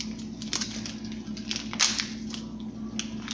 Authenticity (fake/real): real